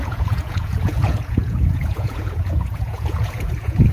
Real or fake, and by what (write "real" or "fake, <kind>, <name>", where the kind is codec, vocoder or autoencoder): fake, vocoder, Vocos